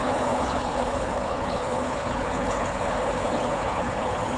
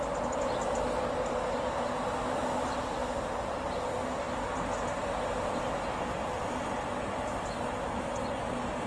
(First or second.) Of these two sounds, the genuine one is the second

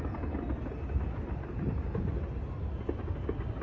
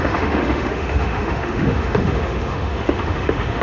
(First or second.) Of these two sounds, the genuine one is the first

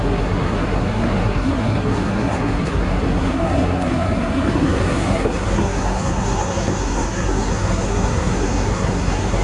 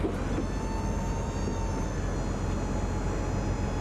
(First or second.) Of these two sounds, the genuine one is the second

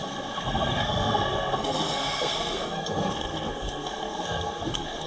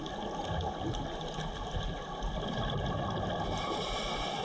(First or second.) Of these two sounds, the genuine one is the second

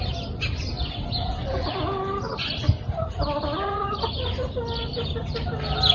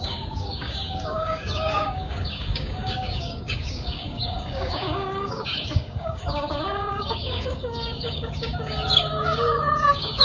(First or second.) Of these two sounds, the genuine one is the first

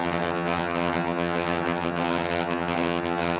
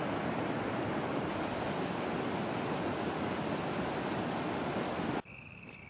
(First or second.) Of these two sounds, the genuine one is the second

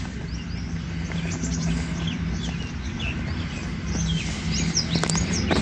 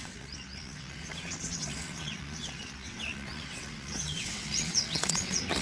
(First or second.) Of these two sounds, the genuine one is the first